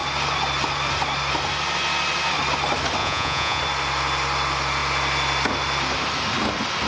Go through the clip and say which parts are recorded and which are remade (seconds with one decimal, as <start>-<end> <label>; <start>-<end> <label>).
0.0-3.0 recorded; 3.0-3.6 remade; 3.6-6.9 recorded